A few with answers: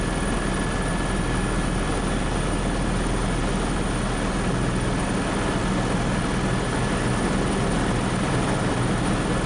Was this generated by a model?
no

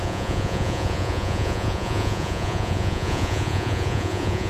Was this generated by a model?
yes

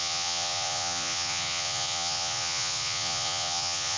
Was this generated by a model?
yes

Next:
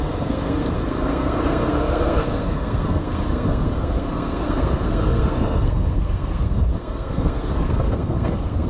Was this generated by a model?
yes